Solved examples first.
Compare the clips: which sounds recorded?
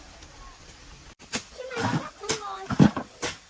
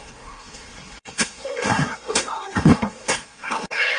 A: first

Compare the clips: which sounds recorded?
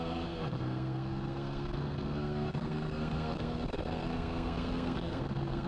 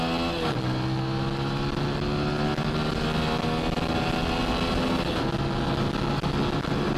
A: second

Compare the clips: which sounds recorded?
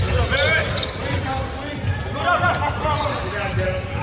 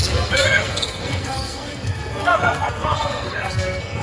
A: first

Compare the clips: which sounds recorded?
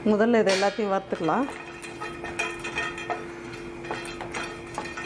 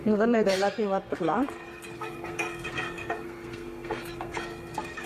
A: first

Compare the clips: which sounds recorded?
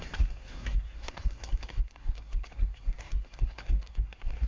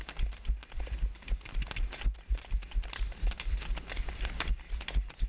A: second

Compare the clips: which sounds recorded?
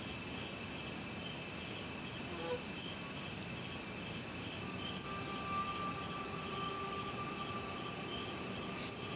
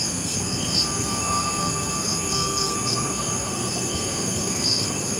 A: first